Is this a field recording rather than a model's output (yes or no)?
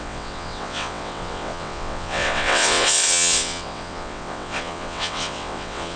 no